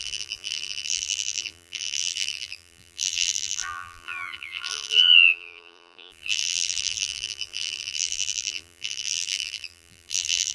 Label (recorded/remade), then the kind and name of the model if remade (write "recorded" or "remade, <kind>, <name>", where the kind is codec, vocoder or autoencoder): remade, vocoder, BigVGAN v2